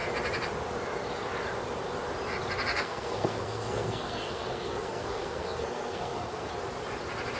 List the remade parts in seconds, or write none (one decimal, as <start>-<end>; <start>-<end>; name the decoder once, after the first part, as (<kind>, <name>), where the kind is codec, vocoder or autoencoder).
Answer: 2.7-6.5 (codec, SNAC)